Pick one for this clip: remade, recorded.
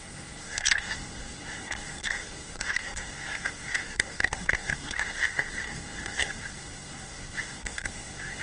remade